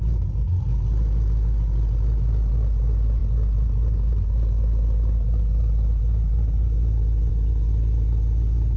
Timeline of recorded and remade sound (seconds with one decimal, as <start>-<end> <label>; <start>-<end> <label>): 0.0-8.8 recorded